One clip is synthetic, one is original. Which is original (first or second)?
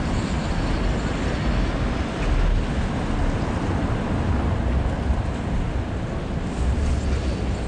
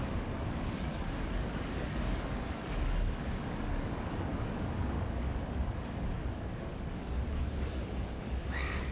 first